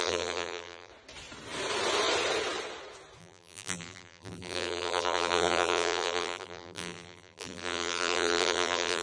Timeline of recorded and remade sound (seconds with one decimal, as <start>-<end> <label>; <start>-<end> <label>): 0.0-0.9 remade; 0.9-3.2 recorded; 3.2-9.0 remade

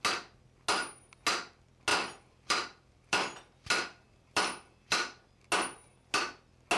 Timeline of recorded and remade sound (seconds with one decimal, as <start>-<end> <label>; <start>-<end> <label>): 0.0-1.9 recorded; 1.9-5.3 remade; 5.3-6.8 recorded

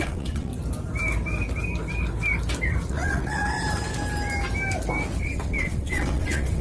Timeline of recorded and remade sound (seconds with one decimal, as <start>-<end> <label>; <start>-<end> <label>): 0.0-0.5 remade; 0.5-2.9 recorded; 2.9-3.4 remade; 3.4-5.2 recorded; 5.2-6.6 remade